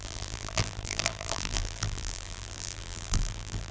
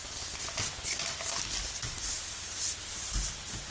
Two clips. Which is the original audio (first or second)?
second